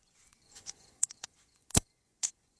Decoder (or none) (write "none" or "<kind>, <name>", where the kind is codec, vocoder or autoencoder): vocoder, Vocos